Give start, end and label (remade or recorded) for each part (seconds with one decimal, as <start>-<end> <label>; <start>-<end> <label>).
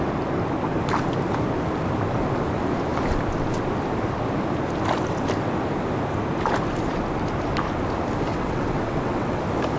0.0-8.3 recorded; 8.3-9.4 remade; 9.4-9.8 recorded